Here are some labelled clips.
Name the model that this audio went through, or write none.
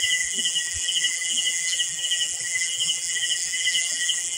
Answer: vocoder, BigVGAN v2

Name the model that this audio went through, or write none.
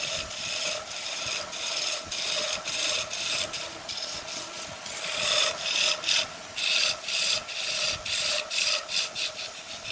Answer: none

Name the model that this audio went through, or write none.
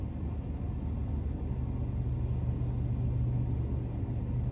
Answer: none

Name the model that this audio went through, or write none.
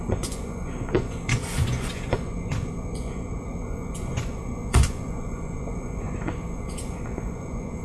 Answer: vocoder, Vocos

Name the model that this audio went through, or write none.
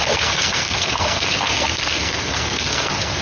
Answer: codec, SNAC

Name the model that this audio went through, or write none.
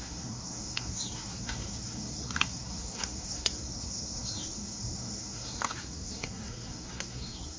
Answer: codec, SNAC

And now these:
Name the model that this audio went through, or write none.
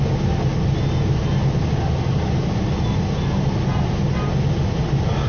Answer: none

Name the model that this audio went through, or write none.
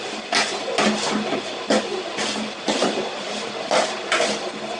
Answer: none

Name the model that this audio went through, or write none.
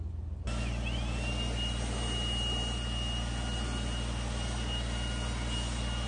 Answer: none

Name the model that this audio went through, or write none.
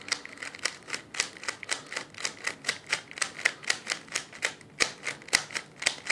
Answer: none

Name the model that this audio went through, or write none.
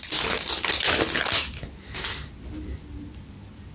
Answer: none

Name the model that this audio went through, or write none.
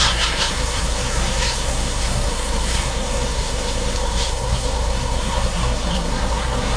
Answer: codec, SNAC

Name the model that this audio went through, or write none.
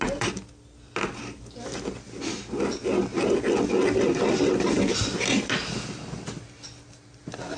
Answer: none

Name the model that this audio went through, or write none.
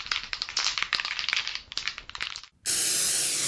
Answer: none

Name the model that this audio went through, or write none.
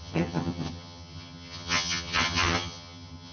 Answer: vocoder, HiFi-GAN